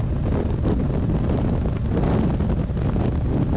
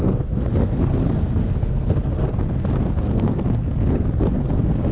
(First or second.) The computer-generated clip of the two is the second